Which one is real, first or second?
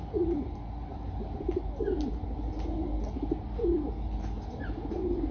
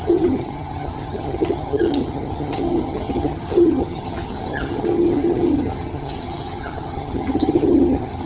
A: first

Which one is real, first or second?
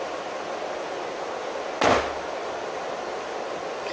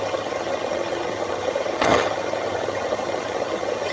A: first